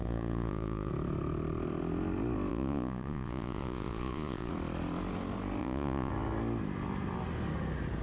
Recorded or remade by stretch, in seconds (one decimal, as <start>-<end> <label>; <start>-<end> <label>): 0.0-0.9 remade; 0.9-2.5 recorded; 2.5-4.5 remade; 4.5-5.6 recorded; 5.6-6.1 remade; 6.1-8.0 recorded